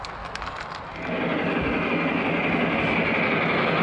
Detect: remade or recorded recorded